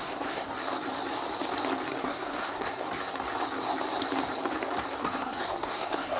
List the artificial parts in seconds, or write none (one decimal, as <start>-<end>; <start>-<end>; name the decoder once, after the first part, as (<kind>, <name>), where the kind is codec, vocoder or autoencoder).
0.0-0.5 (codec, SNAC); 2.0-2.7; 5.0-6.2